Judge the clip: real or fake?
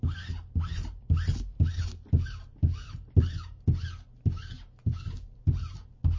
real